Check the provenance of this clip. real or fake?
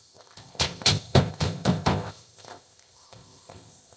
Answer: fake